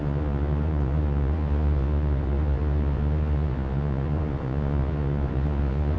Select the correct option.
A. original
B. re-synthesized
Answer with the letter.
B